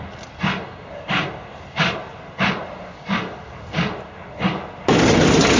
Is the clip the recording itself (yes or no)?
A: yes